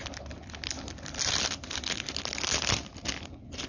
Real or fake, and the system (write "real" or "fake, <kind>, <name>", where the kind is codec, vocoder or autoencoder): real